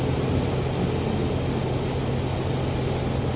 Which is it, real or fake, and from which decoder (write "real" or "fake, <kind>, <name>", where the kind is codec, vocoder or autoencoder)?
real